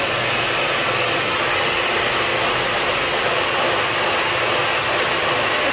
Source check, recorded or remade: recorded